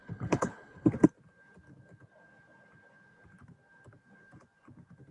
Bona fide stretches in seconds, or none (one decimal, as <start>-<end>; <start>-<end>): 0.9-5.1